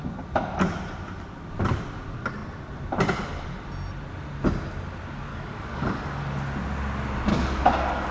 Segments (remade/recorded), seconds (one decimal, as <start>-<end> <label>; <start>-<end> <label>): 0.0-5.3 recorded; 5.3-6.2 remade; 6.2-7.3 recorded; 7.3-8.1 remade

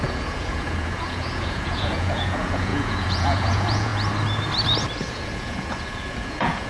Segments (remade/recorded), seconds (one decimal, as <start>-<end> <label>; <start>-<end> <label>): 0.0-3.9 remade; 3.9-5.1 recorded; 5.1-6.7 remade

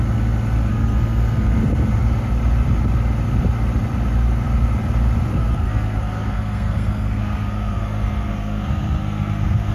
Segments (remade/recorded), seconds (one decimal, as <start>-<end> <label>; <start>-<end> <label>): 0.0-0.7 recorded; 0.7-1.6 remade; 1.6-5.3 recorded; 5.3-9.7 remade

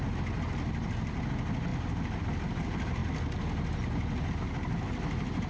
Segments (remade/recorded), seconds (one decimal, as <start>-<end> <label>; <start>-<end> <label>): 0.0-5.5 recorded

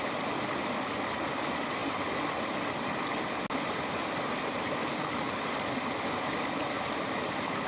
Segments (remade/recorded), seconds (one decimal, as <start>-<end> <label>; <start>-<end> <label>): 0.0-7.7 recorded

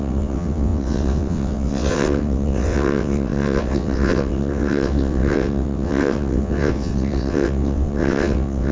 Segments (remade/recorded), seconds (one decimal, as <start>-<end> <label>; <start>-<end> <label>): 0.0-8.7 remade